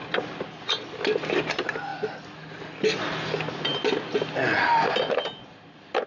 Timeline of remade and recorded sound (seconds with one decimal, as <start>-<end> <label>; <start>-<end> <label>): 0.0-6.1 recorded